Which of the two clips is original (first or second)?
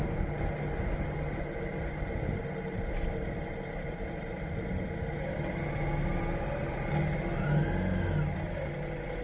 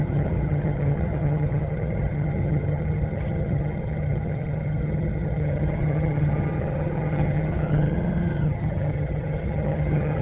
first